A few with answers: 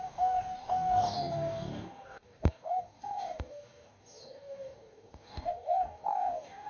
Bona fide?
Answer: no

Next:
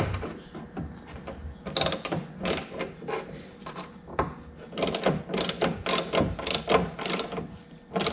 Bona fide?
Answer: yes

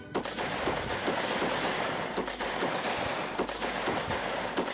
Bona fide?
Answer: yes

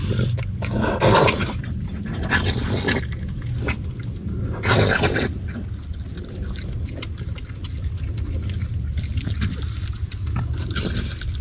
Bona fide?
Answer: yes